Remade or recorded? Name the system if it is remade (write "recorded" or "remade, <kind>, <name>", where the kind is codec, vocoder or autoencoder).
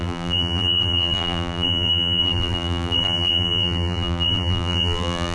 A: remade, vocoder, BigVGAN v2